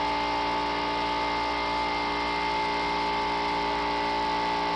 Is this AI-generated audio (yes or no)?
no